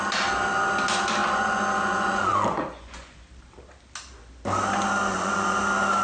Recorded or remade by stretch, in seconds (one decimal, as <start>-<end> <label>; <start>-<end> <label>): 0.0-1.2 recorded; 1.2-3.2 remade; 3.2-5.1 recorded; 5.1-5.6 remade; 5.6-6.0 recorded